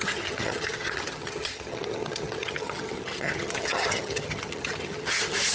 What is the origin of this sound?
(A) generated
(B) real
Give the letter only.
A